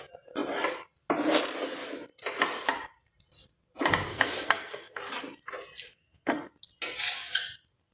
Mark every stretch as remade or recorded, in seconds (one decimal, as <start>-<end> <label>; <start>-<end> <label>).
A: 0.0-4.1 recorded; 4.1-5.0 remade; 5.0-5.9 recorded; 5.9-6.5 remade; 6.5-7.9 recorded